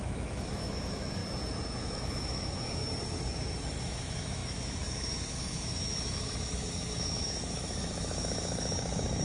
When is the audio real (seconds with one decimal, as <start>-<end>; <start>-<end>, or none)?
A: 1.2-1.8; 2.8-3.8